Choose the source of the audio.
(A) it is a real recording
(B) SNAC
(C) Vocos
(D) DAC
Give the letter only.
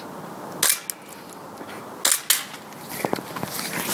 A